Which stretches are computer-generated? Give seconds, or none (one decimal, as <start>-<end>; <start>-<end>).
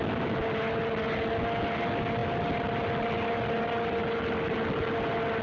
none